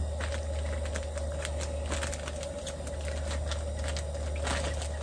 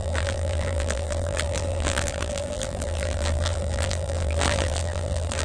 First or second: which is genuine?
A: first